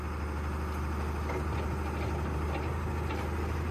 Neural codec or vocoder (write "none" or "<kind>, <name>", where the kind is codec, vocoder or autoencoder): none